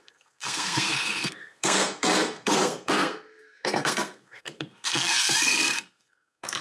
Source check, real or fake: fake